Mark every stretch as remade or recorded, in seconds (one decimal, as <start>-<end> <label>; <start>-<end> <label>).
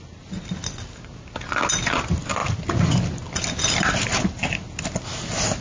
0.0-5.6 recorded